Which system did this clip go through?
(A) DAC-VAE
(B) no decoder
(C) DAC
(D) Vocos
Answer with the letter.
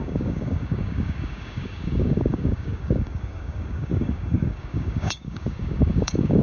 C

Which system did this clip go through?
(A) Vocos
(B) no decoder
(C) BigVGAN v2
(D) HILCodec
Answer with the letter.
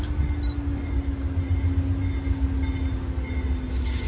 B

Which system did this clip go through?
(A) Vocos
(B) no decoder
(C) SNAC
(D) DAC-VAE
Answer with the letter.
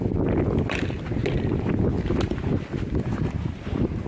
B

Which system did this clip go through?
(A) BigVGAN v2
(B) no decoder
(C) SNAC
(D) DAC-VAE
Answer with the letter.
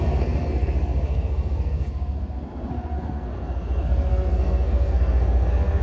C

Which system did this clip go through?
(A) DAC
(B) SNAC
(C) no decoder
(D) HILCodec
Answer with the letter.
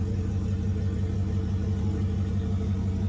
C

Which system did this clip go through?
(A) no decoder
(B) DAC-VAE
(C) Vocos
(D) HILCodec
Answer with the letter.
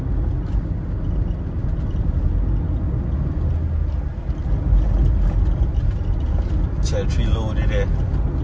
A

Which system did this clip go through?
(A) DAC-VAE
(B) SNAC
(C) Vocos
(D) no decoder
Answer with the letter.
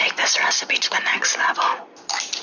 D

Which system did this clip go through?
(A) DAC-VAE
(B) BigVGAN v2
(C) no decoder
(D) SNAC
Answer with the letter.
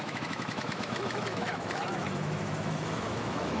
A